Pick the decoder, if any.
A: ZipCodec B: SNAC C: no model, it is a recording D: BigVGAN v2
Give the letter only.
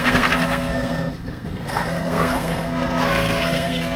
B